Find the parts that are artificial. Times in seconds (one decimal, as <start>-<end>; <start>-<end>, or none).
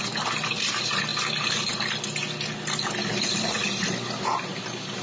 none